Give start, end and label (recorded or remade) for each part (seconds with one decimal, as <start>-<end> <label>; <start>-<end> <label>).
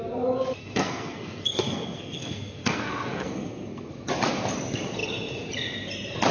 0.0-0.6 recorded; 0.6-3.9 remade; 3.9-6.3 recorded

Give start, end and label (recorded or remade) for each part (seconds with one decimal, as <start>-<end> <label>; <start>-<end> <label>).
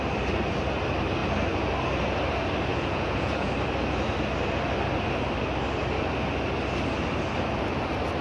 0.0-2.7 recorded; 2.7-3.5 remade; 3.5-8.2 recorded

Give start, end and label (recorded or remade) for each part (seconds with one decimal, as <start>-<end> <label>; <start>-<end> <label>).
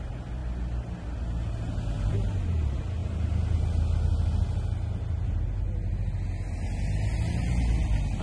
0.0-8.2 recorded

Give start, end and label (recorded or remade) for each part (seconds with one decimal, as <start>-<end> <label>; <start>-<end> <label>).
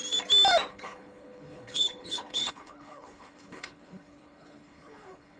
0.0-0.7 recorded; 0.7-5.4 remade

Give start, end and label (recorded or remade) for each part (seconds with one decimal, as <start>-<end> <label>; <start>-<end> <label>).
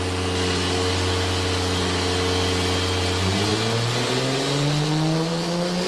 0.0-5.9 recorded